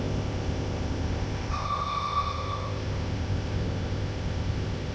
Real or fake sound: fake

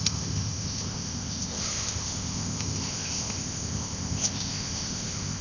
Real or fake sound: fake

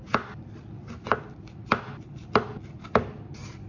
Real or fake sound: real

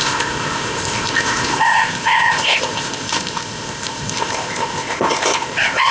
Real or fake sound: fake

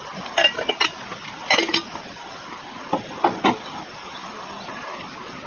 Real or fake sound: real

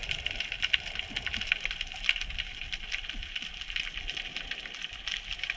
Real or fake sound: real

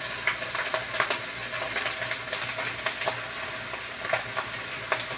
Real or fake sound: real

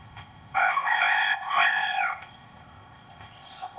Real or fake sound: fake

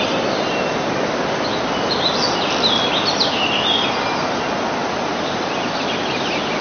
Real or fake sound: real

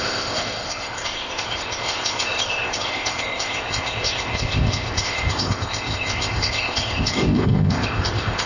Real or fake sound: fake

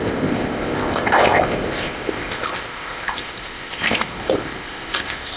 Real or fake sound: fake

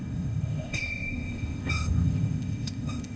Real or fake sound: fake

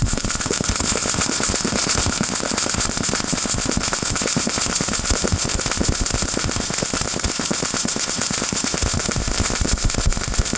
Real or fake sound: fake